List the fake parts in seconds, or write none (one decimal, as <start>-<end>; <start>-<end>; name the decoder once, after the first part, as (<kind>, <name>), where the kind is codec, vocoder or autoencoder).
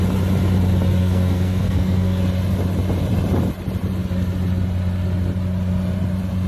1.0-2.2 (codec, SNAC)